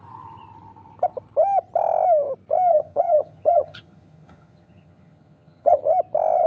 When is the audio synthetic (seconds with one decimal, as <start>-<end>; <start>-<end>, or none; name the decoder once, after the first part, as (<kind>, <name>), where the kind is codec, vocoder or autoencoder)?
2.7-5.8 (vocoder, HiFi-GAN)